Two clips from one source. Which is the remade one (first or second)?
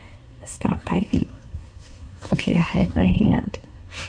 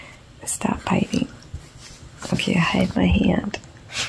first